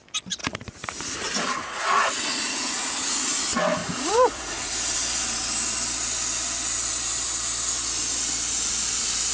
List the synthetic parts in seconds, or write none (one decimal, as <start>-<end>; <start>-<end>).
0.4-3.4; 3.8-4.7